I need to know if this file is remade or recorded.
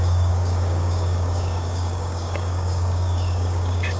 remade